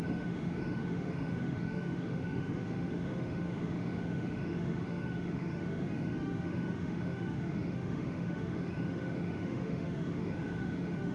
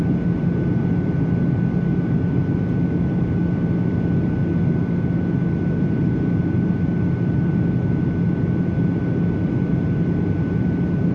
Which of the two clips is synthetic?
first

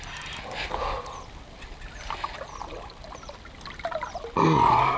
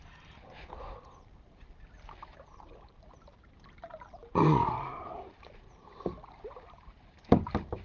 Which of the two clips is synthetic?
second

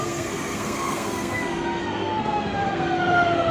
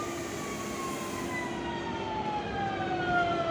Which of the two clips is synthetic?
first